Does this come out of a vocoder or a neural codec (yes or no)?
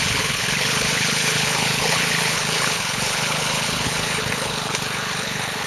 yes